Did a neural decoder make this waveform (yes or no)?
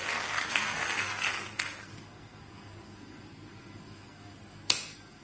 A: yes